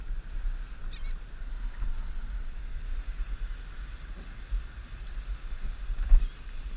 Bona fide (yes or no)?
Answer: yes